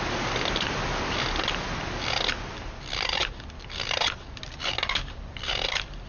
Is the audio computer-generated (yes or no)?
no